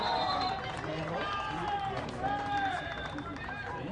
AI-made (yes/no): yes